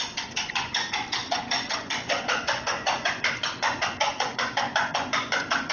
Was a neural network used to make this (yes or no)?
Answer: yes